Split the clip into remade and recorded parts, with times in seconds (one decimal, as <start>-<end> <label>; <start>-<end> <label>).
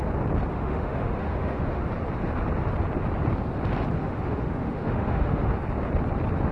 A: 0.0-0.5 recorded; 0.5-1.8 remade; 1.8-4.0 recorded; 4.0-5.5 remade; 5.5-6.5 recorded